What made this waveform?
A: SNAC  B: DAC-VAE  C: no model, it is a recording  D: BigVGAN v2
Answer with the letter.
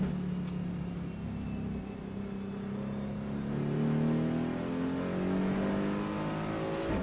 C